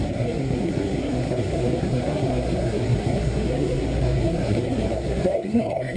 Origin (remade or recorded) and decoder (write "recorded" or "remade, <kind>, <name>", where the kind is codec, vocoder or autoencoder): remade, codec, SNAC